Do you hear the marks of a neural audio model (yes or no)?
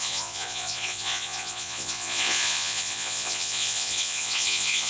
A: yes